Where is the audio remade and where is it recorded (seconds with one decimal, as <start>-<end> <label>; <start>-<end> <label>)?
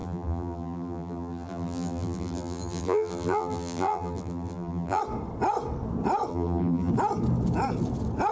0.0-5.0 remade; 5.0-6.3 recorded; 6.3-6.9 remade; 6.9-8.3 recorded